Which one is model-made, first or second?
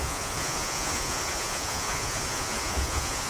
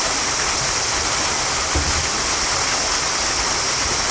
first